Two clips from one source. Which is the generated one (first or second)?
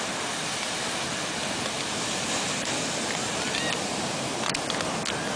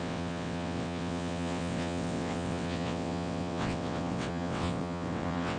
second